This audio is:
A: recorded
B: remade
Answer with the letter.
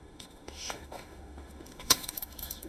B